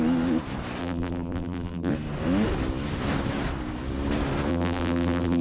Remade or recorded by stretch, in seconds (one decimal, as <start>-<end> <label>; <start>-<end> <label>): 0.0-0.8 recorded; 0.8-1.9 remade; 1.9-4.5 recorded; 4.5-5.4 remade